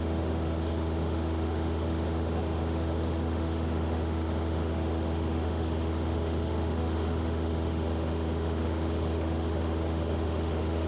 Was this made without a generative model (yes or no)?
no